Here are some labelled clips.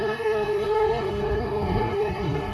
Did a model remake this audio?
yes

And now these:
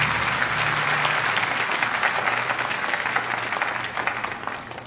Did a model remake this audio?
no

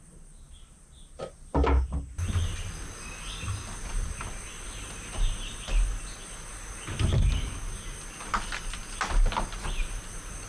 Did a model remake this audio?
no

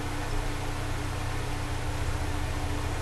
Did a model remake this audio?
no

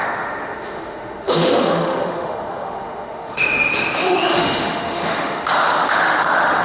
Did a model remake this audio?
yes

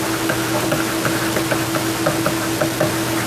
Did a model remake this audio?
no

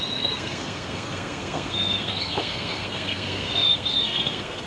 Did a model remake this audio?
yes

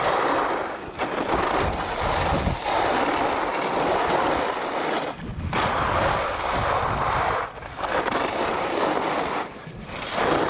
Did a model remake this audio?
no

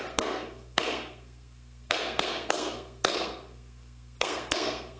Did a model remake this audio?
yes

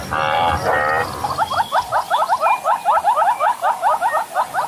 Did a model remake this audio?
no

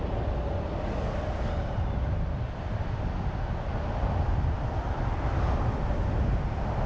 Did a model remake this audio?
no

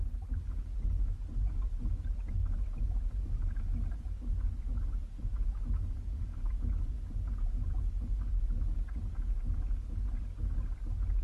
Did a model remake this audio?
no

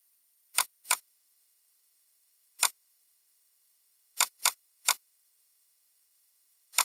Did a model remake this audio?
yes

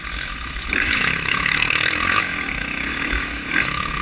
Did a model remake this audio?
yes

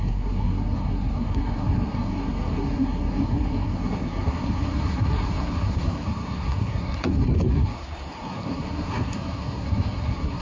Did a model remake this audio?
yes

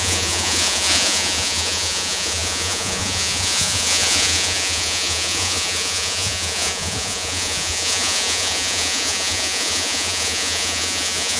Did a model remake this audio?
yes